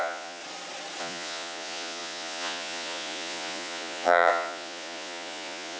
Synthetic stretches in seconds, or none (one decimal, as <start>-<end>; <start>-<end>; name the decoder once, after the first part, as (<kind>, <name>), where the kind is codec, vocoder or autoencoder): 0.0-0.4 (vocoder, Vocos); 1.0-5.8